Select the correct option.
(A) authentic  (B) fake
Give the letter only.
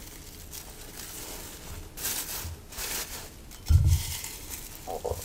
A